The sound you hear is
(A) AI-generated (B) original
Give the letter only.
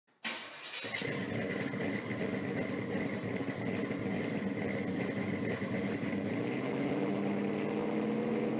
B